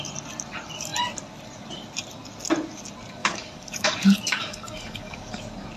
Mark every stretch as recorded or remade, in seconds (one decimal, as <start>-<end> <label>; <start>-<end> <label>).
0.0-3.2 recorded; 3.2-5.3 remade; 5.3-5.8 recorded